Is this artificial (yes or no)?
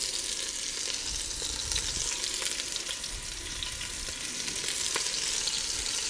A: no